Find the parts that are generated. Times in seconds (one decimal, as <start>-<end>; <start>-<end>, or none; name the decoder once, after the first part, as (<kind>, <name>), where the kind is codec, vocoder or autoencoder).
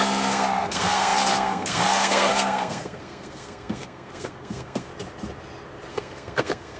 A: 0.0-4.9 (codec, SNAC); 5.9-6.8